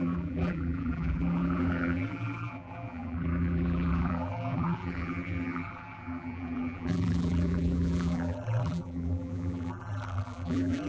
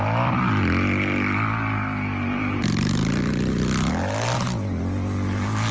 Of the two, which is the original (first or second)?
second